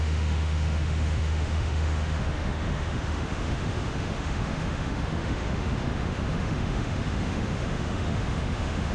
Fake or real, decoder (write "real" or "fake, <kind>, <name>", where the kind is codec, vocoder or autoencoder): fake, autoencoder, DAC-VAE